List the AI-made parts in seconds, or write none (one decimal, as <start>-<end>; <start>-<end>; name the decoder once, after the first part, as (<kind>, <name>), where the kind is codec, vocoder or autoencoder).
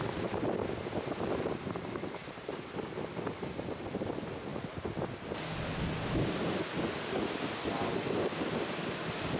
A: 0.0-4.5 (vocoder, BigVGAN v2); 7.3-9.4